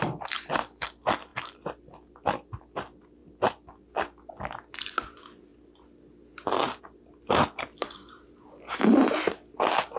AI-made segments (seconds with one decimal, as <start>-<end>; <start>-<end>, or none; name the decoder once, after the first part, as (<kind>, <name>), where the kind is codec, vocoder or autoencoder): none